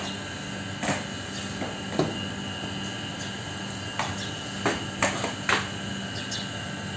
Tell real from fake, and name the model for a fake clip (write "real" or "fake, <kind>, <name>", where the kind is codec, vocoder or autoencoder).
real